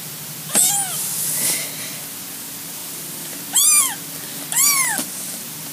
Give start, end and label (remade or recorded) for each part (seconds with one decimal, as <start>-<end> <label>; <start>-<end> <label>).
0.0-5.7 recorded